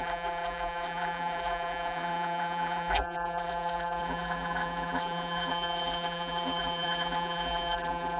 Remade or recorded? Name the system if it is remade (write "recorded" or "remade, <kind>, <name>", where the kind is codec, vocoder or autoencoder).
remade, vocoder, BigVGAN v2